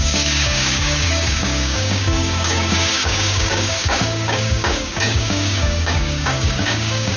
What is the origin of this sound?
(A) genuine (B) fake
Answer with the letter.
B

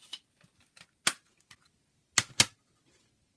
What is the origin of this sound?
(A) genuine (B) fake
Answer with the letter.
A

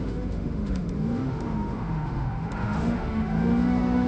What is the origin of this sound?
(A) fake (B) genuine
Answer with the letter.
A